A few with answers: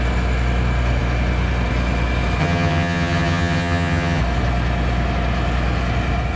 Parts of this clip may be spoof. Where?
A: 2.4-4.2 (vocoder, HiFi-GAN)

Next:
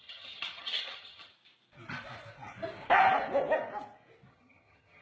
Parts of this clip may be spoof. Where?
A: 0.0-1.3 (vocoder, HiFi-GAN); 4.3-5.0

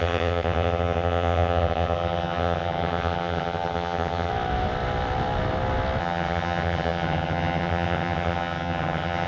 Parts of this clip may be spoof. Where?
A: 0.0-4.3 (vocoder, HiFi-GAN); 6.0-9.3

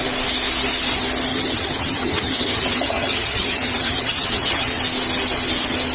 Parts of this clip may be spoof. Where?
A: 1.3-4.8 (vocoder, HiFi-GAN)

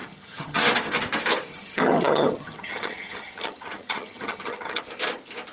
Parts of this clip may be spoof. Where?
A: 0.0-0.6 (vocoder, HiFi-GAN); 1.5-4.8